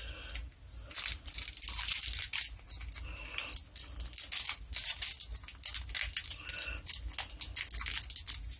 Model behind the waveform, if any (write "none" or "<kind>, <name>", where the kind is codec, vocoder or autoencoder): none